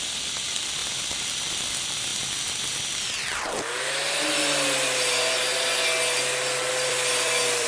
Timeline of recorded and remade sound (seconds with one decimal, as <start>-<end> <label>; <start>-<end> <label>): 0.0-0.8 remade; 0.8-1.5 recorded; 1.5-2.1 remade; 2.1-6.7 recorded; 6.7-7.7 remade